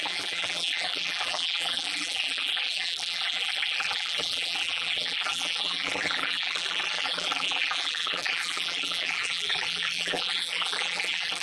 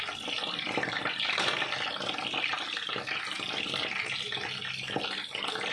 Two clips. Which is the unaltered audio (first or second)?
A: second